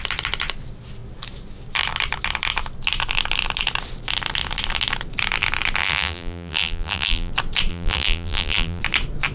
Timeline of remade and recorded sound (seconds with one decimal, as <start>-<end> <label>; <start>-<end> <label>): 0.0-5.8 recorded; 5.8-7.3 remade; 7.3-7.7 recorded; 7.7-8.8 remade; 8.8-9.3 recorded